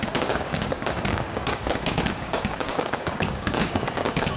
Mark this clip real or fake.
fake